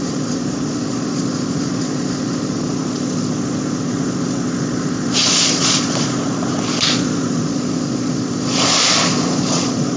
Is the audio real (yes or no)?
no